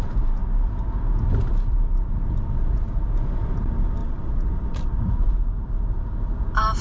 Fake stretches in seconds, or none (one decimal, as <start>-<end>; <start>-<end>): 4.0-6.8